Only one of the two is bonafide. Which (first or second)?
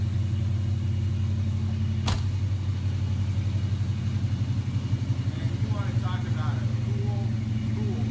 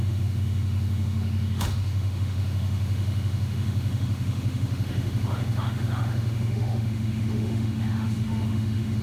first